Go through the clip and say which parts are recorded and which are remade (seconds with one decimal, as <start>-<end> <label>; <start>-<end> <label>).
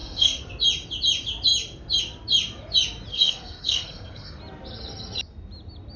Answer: 0.0-0.5 remade; 0.5-3.1 recorded; 3.1-4.4 remade; 4.4-6.0 recorded